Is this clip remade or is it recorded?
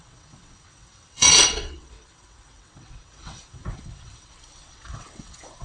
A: remade